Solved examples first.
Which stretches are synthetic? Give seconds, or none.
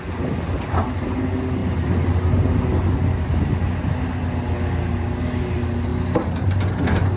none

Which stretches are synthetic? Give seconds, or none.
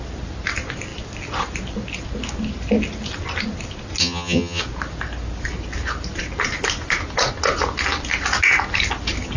4.0-4.6 (vocoder, HiFi-GAN)